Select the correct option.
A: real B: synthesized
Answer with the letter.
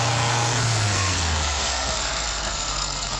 B